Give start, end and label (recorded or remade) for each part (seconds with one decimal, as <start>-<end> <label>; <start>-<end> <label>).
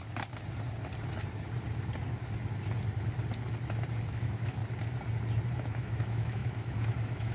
0.0-4.1 recorded; 4.1-4.6 remade; 4.6-5.5 recorded; 5.5-7.3 remade